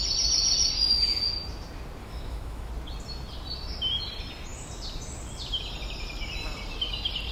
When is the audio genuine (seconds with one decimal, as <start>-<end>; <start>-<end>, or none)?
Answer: 0.0-2.0; 2.7-7.3